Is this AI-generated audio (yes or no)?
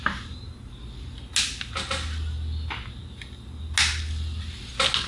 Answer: no